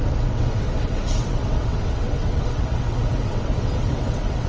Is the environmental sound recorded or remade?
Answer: remade